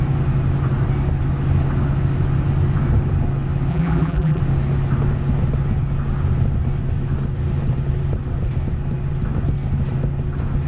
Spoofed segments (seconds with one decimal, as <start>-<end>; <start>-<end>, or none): 3.7-4.4